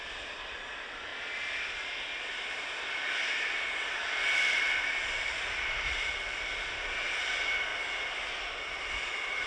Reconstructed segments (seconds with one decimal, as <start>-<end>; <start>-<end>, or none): 0.0-1.1; 1.7-7.7; 8.8-9.5